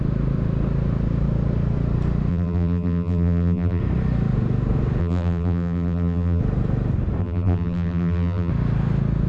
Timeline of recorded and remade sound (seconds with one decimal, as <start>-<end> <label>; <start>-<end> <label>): 0.0-2.3 recorded; 2.3-3.8 remade; 3.8-5.0 recorded; 5.0-6.4 remade; 6.4-7.2 recorded; 7.2-8.5 remade; 8.5-9.3 recorded